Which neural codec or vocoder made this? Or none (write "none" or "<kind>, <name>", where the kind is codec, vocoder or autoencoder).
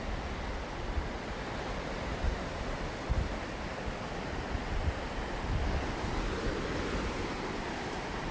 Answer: none